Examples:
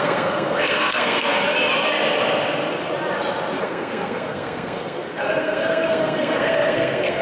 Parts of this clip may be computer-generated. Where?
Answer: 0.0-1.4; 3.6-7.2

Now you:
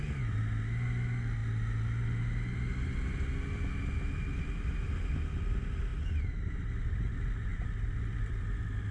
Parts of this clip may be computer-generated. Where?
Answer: 7.5-8.5

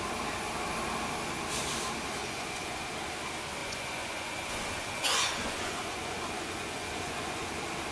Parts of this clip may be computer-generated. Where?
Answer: 2.2-2.8; 3.6-7.5

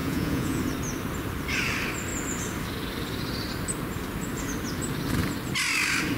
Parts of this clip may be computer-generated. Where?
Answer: 0.0-0.6

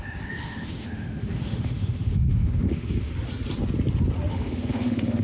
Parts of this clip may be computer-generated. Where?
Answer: 0.0-3.1; 4.3-5.2

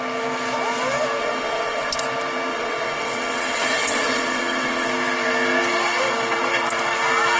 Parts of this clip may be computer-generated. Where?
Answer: 1.2-1.9; 2.5-4.9

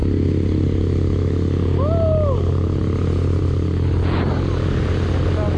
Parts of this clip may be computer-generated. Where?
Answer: none